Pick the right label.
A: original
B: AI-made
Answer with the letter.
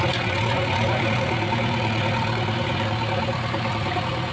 B